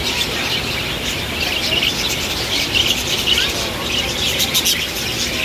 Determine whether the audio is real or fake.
real